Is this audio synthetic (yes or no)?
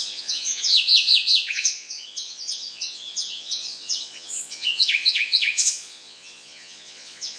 yes